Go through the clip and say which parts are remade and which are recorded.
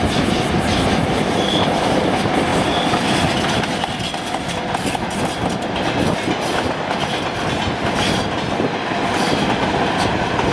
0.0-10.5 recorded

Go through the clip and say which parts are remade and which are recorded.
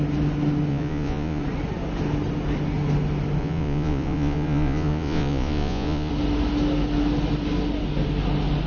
0.0-0.7 recorded; 0.7-1.4 remade; 1.4-3.4 recorded; 3.4-6.1 remade; 6.1-8.7 recorded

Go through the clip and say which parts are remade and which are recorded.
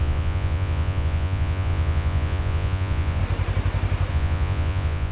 0.0-3.2 remade; 3.2-4.1 recorded; 4.1-5.1 remade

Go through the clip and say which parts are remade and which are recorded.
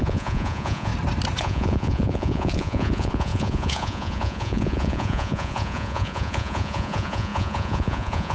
0.0-0.9 remade; 0.9-1.4 recorded; 1.4-8.3 remade